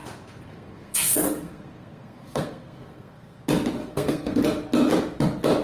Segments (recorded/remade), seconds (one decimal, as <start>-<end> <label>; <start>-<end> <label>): 0.0-3.4 remade; 3.4-3.8 recorded; 3.8-4.4 remade; 4.4-5.6 recorded